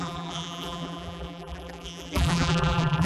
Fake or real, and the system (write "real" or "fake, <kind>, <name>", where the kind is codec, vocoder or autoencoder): fake, vocoder, BigVGAN v2